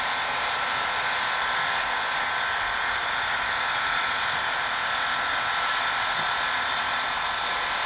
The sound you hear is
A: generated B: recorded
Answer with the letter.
B